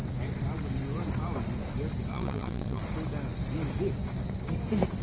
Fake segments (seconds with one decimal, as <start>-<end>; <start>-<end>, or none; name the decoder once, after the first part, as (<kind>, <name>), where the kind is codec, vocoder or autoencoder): 2.1-2.8 (vocoder, WaveNeXt)